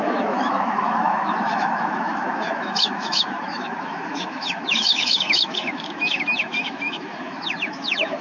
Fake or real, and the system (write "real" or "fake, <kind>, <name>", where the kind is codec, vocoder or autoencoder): fake, autoencoder, DAC-VAE